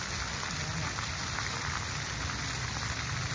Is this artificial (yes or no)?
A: no